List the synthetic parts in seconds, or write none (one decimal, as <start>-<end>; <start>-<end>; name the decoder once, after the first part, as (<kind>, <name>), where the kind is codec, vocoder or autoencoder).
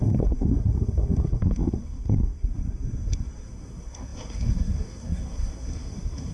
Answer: 0.0-6.3 (codec, SNAC)